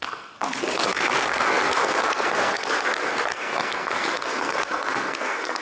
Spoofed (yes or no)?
yes